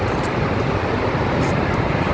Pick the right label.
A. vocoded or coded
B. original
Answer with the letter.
B